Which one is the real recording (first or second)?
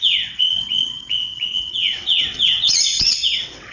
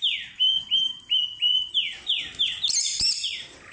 second